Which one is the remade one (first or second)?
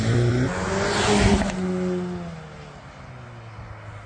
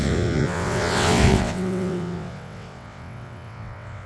second